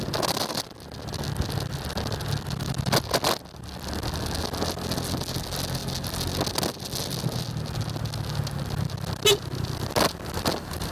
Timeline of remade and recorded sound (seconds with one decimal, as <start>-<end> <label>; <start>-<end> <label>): 0.0-10.9 recorded